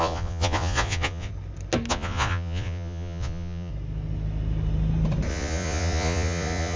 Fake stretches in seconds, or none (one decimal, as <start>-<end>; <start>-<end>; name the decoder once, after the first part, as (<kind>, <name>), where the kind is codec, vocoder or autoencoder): 0.0-1.3 (vocoder, Vocos); 1.9-3.7; 5.3-6.8